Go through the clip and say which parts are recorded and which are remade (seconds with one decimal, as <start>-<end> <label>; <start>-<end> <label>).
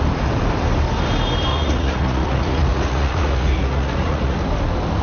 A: 0.0-1.5 recorded; 1.5-4.5 remade; 4.5-5.0 recorded